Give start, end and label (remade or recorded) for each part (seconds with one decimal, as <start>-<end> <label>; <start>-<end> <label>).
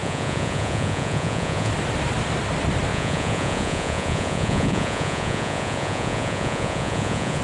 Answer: 0.0-1.7 remade; 1.7-2.9 recorded; 2.9-7.4 remade